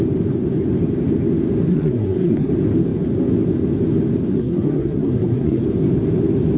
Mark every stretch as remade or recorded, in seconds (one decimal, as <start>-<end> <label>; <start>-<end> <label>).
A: 0.0-1.7 recorded; 1.7-2.5 remade; 2.5-4.3 recorded; 4.3-5.6 remade; 5.6-6.6 recorded